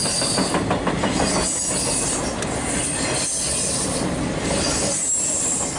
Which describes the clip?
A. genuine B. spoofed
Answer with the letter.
A